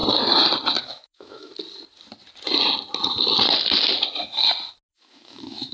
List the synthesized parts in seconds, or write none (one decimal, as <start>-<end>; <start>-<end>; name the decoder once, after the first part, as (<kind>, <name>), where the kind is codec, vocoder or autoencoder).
0.8-1.5 (autoencoder, DAC-VAE); 4.9-5.7